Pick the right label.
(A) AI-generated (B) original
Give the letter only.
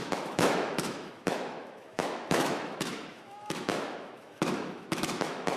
A